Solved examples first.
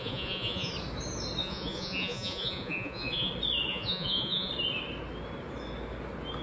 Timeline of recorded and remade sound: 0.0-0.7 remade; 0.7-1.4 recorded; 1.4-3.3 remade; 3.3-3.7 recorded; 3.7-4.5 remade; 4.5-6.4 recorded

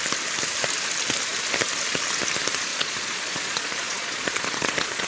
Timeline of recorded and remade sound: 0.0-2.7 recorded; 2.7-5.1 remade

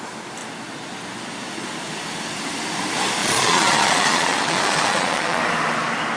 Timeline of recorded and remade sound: 0.0-3.2 recorded; 3.2-5.4 remade; 5.4-6.2 recorded

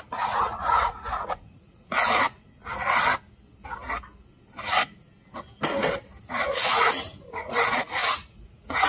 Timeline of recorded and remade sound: 0.0-2.6 remade; 2.6-6.2 recorded; 6.2-8.9 remade

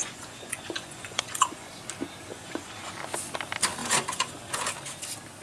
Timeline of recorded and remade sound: 0.0-1.7 remade; 1.7-2.3 recorded; 2.3-2.9 remade; 2.9-3.8 recorded; 3.8-4.7 remade; 4.7-5.4 recorded

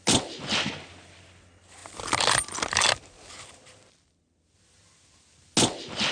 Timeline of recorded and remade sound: 0.0-6.1 recorded

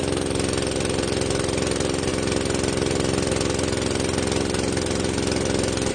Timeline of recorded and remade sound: 0.0-5.9 recorded